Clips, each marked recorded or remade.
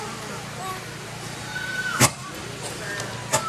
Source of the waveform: recorded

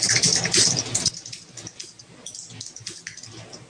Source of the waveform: recorded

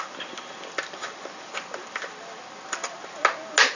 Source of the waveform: recorded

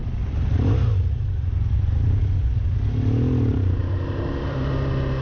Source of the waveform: recorded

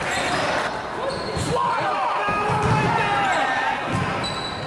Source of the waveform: recorded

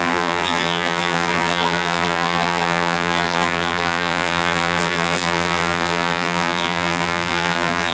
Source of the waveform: remade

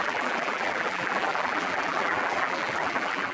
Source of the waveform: remade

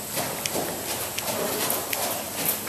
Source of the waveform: recorded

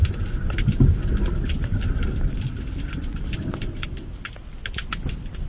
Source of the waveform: recorded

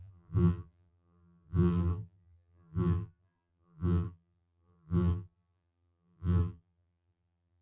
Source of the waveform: remade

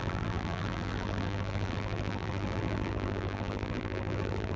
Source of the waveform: remade